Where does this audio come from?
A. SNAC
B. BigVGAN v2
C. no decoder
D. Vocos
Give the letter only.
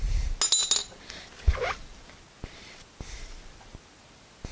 C